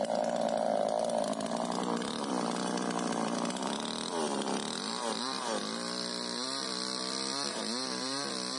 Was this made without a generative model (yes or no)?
no